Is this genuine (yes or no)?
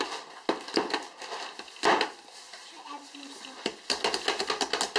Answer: yes